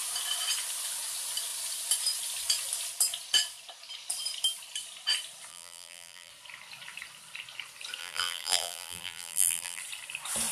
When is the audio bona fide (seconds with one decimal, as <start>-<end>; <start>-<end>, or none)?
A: 0.0-5.5; 6.3-8.0; 9.8-10.5